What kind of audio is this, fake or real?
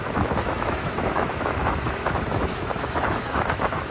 fake